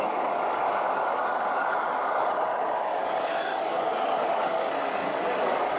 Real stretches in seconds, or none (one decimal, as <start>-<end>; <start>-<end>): none

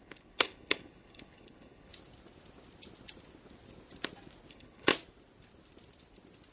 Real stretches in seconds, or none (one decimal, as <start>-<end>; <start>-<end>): 1.9-4.5; 4.9-6.5

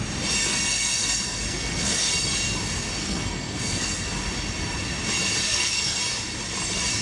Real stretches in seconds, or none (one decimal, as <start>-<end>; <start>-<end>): 0.0-0.5; 2.1-3.0; 4.1-5.4; 6.0-7.0